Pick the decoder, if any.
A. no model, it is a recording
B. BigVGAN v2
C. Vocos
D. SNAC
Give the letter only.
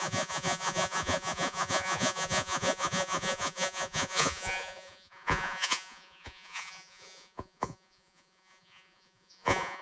C